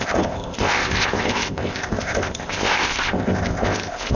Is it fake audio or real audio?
fake